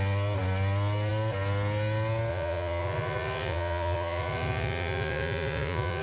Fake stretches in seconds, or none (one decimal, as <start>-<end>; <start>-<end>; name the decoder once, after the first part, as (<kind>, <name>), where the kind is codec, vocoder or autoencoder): 2.3-6.0 (vocoder, Vocos)

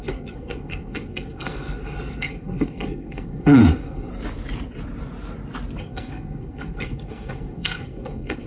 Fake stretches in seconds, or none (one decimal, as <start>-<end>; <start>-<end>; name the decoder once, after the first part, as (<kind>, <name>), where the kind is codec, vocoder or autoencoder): 0.0-4.1 (codec, SNAC); 5.8-8.5

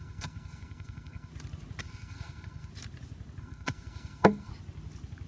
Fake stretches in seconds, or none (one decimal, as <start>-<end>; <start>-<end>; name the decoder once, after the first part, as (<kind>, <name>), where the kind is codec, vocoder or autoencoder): 0.0-1.3 (codec, SNAC); 1.8-2.7; 3.4-4.5

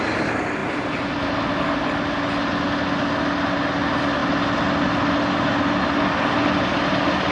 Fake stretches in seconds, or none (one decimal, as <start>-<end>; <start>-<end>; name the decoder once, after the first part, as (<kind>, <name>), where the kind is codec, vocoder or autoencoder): none

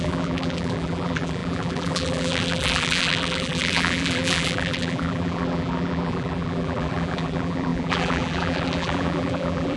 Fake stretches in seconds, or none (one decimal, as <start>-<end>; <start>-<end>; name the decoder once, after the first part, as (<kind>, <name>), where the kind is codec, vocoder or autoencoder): 0.0-9.8 (vocoder, BigVGAN v2)

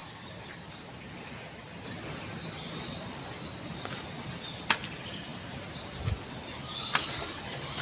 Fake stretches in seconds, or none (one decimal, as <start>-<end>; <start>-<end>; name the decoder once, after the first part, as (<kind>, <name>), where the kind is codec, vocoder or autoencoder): none

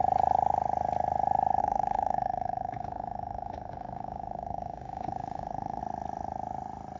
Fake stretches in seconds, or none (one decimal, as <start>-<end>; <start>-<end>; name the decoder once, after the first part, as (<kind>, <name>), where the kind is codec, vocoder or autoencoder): 1.6-5.8 (autoencoder, DAC-VAE)